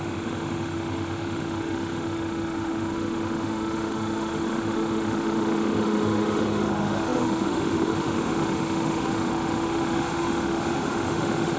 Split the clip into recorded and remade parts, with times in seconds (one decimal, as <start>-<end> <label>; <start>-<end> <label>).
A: 0.0-11.6 remade